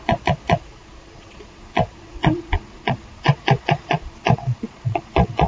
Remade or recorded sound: remade